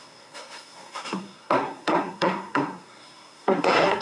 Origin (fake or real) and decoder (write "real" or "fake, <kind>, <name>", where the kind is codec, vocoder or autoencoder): fake, codec, SNAC